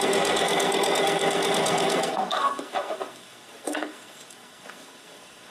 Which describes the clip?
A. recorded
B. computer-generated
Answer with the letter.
B